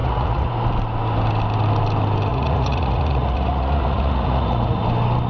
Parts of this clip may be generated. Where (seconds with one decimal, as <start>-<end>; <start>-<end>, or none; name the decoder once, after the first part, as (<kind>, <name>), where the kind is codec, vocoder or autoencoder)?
0.0-0.5 (vocoder, Vocos); 2.3-4.8